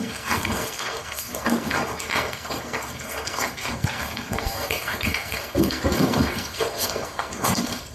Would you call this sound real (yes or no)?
no